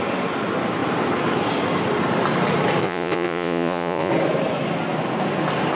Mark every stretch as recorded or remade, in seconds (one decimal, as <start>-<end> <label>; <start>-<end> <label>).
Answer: 0.0-2.8 recorded; 2.8-4.1 remade; 4.1-5.8 recorded